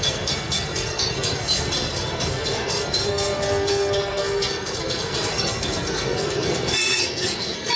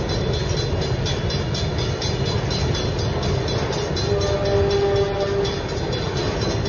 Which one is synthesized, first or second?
first